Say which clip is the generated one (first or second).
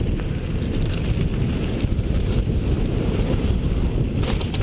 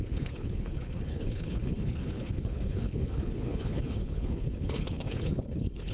second